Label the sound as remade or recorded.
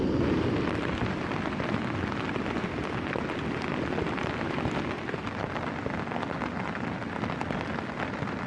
recorded